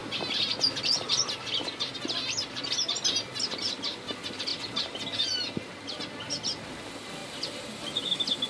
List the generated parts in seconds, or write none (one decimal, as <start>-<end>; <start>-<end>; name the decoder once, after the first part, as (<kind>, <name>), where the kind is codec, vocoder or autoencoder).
none